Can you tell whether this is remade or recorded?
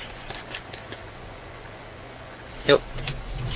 remade